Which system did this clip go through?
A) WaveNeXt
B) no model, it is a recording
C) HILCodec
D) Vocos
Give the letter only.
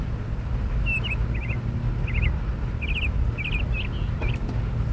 B